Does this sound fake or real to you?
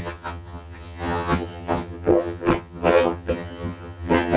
fake